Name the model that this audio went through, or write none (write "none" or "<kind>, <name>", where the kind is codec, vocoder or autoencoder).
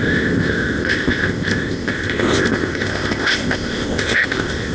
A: codec, ZipCodec